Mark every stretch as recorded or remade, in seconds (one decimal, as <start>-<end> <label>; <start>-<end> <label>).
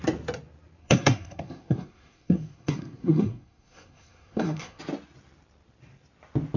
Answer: 0.0-0.8 recorded; 0.8-4.8 remade; 4.8-6.6 recorded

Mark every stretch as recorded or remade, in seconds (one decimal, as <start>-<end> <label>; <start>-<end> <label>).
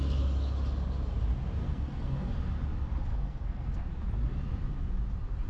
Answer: 0.0-1.6 recorded; 1.6-2.3 remade; 2.3-3.1 recorded; 3.1-3.9 remade; 3.9-5.5 recorded